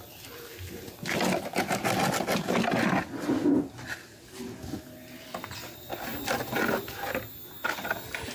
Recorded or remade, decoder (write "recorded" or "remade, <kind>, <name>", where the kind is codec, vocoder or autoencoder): recorded